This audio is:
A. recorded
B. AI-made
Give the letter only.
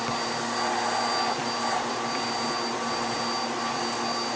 A